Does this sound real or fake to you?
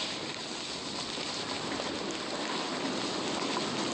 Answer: real